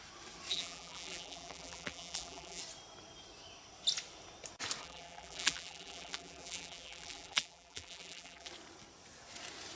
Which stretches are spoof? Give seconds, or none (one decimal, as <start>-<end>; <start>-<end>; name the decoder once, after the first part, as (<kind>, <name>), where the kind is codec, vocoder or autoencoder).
0.5-2.6 (vocoder, BigVGAN v2); 4.8-8.5